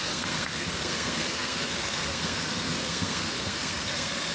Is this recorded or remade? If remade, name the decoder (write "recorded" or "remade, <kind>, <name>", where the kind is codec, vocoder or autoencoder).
remade, codec, SNAC